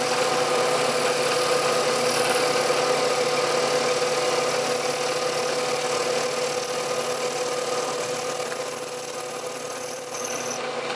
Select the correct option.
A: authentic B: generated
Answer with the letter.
A